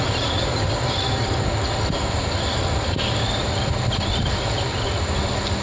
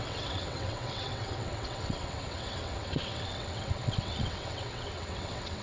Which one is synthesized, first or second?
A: second